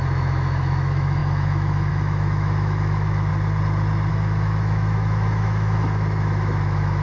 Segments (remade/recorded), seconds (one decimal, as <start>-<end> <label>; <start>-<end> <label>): 0.0-3.3 remade; 3.3-4.1 recorded; 4.1-7.0 remade